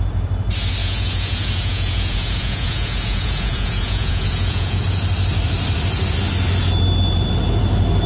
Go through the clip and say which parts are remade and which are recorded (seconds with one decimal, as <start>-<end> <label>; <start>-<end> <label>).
0.0-0.8 recorded; 0.8-4.8 remade; 4.8-8.1 recorded